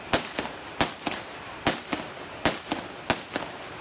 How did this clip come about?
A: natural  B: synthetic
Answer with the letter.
A